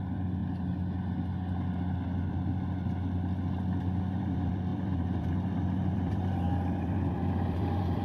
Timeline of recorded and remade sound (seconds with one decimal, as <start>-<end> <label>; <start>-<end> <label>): 0.0-0.4 remade; 0.4-4.0 recorded; 4.0-8.0 remade